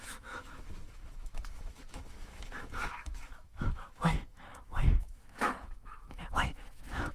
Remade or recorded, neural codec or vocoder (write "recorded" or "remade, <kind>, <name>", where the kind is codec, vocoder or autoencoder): remade, autoencoder, DAC-VAE